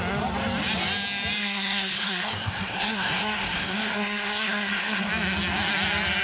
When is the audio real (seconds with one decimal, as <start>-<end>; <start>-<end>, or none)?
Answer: 0.0-1.4; 5.1-6.2